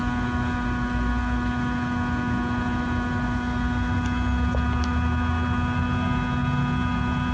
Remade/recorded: recorded